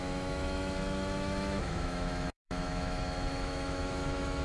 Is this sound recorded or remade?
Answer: remade